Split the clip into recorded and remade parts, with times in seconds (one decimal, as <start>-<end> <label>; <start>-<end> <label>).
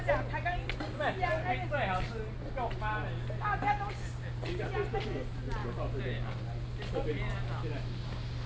0.0-8.5 recorded